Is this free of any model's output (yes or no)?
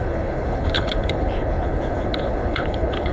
no